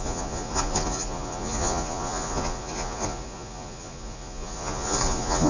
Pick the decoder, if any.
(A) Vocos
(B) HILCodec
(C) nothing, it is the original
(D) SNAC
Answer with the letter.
A